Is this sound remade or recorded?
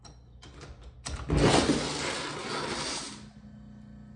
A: recorded